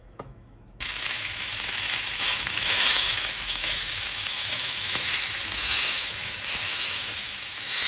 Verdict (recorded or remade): remade